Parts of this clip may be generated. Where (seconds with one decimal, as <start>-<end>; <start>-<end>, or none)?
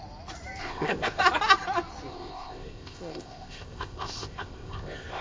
0.6-1.2; 2.1-5.2